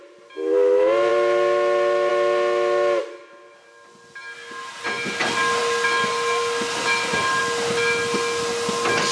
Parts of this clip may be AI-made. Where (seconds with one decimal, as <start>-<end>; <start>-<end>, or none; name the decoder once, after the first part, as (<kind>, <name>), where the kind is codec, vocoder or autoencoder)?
none